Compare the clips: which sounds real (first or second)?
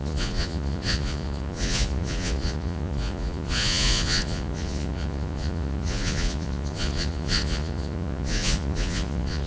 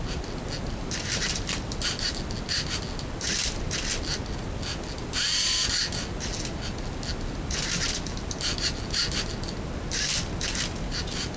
second